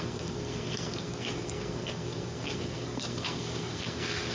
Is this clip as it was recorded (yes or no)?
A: no